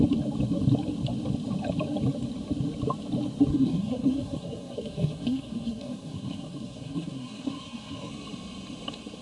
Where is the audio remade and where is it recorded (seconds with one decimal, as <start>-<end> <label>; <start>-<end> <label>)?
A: 0.0-3.5 recorded; 3.5-8.1 remade; 8.1-9.2 recorded